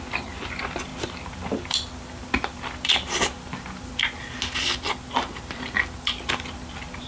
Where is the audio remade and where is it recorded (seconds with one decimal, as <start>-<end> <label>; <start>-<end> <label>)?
0.0-0.9 recorded; 0.9-3.9 remade; 3.9-7.1 recorded